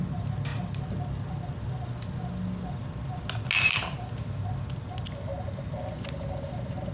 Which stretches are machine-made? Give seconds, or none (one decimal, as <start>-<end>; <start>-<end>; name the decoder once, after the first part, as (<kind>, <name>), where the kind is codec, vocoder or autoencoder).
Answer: none

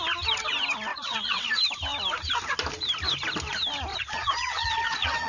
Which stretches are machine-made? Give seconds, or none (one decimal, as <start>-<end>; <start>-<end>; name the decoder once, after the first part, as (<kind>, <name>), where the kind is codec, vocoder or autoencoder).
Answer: 0.9-1.5 (vocoder, Vocos); 3.9-5.3